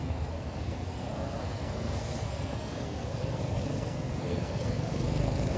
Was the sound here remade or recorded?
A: remade